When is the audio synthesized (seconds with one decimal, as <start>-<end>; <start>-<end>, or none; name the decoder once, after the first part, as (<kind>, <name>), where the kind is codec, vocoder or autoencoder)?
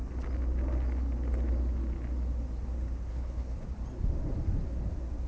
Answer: 3.1-3.7 (codec, HILCodec)